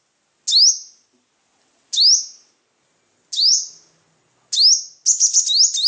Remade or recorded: recorded